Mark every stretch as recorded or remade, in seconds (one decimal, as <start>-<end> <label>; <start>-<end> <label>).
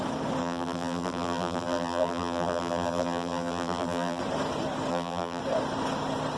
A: 0.0-0.4 recorded; 0.4-4.2 remade; 4.2-4.9 recorded; 4.9-5.4 remade; 5.4-6.4 recorded